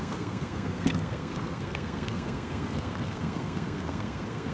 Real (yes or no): no